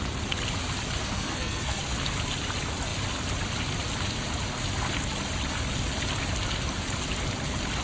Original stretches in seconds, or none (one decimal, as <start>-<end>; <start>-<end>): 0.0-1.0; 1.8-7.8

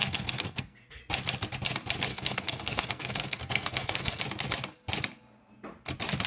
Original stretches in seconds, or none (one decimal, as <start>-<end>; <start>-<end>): 1.0-2.1; 4.2-6.3

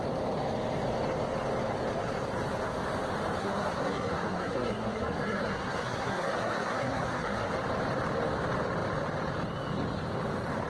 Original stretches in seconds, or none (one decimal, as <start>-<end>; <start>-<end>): 0.0-3.4; 7.5-10.7